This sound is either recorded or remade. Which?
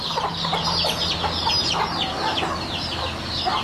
recorded